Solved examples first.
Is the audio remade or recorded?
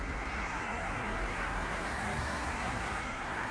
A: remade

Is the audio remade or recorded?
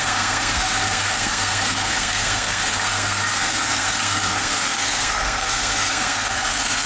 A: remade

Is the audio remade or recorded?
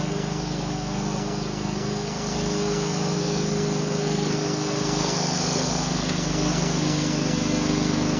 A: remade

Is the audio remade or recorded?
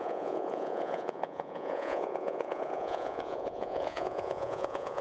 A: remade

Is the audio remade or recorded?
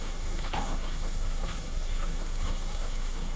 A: remade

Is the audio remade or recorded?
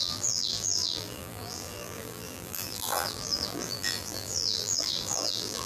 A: remade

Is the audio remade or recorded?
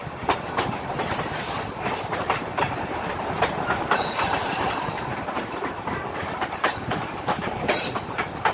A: remade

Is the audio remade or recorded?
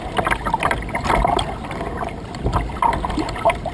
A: recorded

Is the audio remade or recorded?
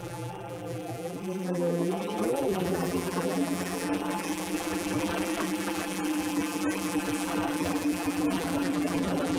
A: remade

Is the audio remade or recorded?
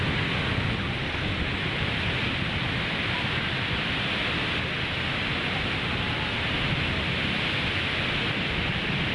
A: recorded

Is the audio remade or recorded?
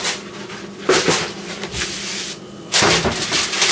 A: recorded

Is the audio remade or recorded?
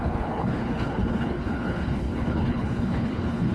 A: remade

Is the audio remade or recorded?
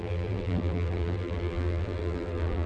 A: remade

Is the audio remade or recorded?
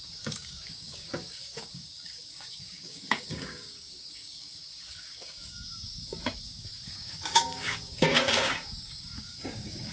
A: remade